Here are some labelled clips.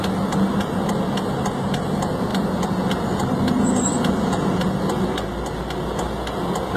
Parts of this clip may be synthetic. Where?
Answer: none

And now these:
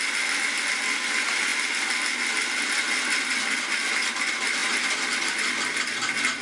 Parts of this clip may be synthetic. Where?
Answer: none

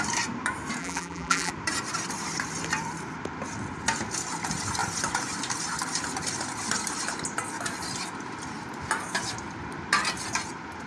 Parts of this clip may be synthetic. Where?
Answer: 0.8-1.5 (vocoder, BigVGAN v2)

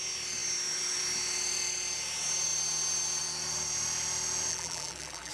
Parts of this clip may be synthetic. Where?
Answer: 4.5-5.3 (vocoder, BigVGAN v2)